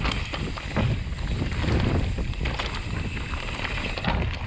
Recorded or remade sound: recorded